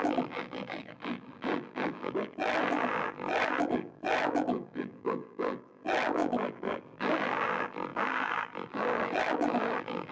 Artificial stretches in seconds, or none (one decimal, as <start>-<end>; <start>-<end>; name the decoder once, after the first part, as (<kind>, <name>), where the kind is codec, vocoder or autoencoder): 0.0-10.1 (vocoder, BigVGAN v2)